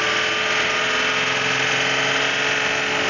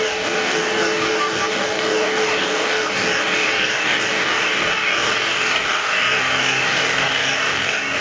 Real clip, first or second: first